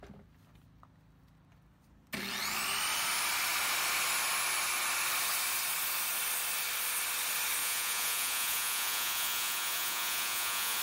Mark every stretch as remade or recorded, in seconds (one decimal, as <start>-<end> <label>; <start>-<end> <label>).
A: 0.0-7.6 recorded; 7.6-10.8 remade